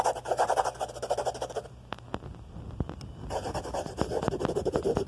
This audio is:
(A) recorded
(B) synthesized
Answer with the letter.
A